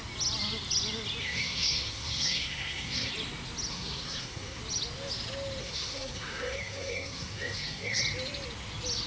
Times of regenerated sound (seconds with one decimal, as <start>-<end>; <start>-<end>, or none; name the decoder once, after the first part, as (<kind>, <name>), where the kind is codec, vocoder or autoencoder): 1.2-3.1 (codec, SNAC); 3.7-4.6; 5.6-8.0